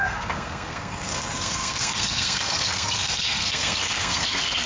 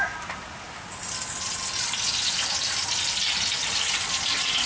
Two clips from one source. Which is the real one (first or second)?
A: second